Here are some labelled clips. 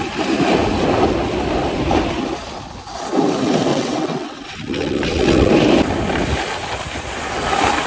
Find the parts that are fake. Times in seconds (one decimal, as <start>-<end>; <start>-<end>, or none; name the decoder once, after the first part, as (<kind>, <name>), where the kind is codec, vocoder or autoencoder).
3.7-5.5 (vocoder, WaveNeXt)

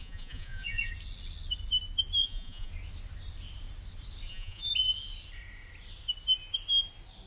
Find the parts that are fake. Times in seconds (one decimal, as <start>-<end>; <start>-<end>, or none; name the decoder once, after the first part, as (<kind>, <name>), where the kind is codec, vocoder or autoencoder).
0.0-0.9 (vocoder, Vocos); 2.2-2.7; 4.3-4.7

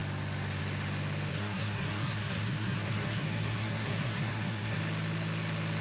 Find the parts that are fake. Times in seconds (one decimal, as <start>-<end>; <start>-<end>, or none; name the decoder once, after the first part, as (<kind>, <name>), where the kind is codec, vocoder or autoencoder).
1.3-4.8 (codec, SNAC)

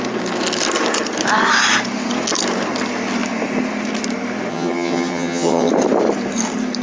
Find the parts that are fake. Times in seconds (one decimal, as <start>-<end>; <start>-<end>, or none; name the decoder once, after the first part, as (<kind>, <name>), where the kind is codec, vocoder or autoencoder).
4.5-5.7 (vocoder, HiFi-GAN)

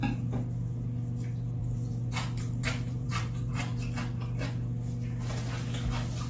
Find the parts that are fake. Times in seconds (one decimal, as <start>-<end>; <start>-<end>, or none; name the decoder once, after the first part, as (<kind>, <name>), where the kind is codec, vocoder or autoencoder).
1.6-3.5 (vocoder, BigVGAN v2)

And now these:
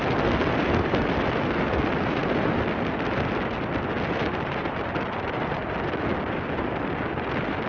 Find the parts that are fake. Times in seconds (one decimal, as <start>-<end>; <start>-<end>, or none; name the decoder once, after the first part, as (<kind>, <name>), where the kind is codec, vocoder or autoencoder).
none

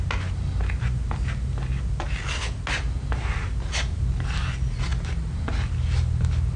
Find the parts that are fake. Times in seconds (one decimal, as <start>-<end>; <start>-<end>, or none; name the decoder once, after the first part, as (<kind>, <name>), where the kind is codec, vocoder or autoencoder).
none

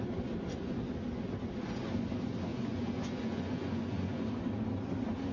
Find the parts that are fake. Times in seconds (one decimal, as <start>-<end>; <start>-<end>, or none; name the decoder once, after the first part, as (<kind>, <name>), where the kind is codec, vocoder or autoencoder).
2.5-4.4 (vocoder, Vocos)